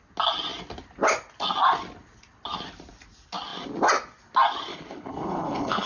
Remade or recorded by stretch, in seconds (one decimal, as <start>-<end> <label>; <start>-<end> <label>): 0.0-4.7 recorded; 4.7-5.9 remade